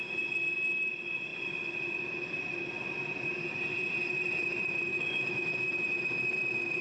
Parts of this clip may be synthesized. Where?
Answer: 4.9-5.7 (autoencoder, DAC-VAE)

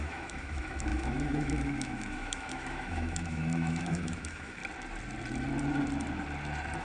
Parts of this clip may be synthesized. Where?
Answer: 0.0-4.6 (autoencoder, DAC-VAE)